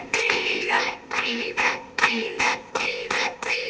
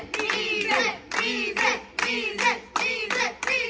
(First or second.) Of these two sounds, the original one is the second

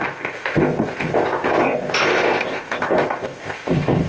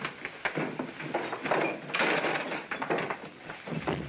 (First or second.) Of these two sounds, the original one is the second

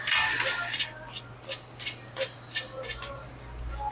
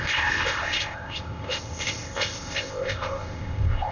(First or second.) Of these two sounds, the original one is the first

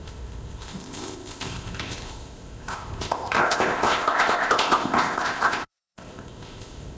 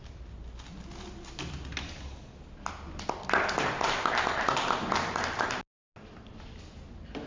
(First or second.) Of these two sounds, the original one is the second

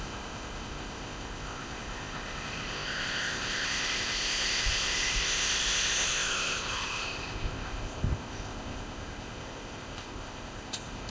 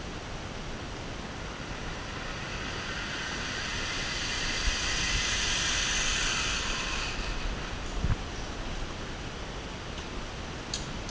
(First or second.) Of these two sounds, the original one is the second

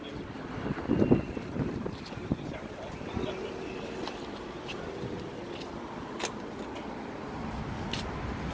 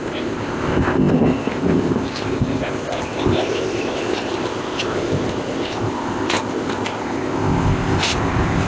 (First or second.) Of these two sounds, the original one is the first